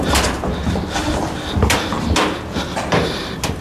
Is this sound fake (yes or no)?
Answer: no